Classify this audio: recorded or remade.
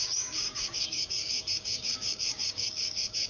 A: remade